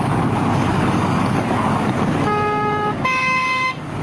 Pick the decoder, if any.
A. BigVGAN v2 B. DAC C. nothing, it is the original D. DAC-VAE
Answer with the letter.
B